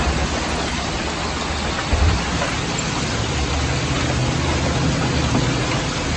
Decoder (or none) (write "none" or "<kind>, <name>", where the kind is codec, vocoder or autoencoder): none